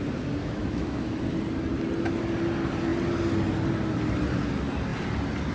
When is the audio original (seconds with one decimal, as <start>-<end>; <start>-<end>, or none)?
0.0-0.4; 1.2-5.5